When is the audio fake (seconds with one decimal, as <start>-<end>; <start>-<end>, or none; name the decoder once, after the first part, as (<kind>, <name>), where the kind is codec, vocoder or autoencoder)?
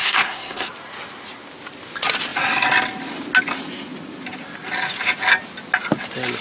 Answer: 0.0-0.7 (codec, SNAC)